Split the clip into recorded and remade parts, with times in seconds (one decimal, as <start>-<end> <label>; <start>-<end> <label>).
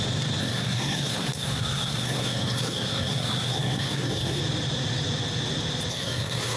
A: 0.0-0.4 recorded; 0.4-4.4 remade; 4.4-5.9 recorded; 5.9-6.6 remade